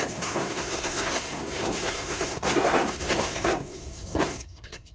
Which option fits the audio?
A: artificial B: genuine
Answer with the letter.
A